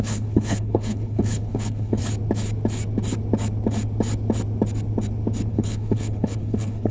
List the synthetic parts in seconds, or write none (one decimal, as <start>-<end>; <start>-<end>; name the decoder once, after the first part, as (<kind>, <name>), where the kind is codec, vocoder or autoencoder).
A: 0.0-2.0 (codec, HILCodec); 5.5-6.9